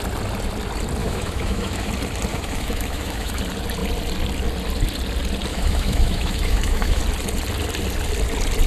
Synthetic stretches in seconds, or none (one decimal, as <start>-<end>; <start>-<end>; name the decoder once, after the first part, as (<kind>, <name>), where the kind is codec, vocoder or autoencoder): 1.0-1.9 (autoencoder, DAC-VAE); 2.3-3.4; 5.5-7.0